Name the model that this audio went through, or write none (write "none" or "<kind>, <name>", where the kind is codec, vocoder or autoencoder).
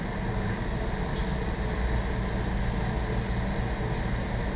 none